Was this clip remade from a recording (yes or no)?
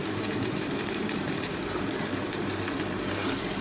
yes